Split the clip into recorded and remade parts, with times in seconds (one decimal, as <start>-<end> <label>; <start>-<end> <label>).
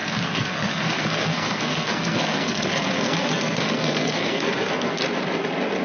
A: 0.0-5.0 remade; 5.0-5.8 recorded